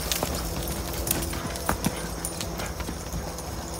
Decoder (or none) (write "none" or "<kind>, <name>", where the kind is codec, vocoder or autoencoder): none